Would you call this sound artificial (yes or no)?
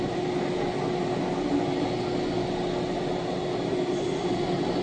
no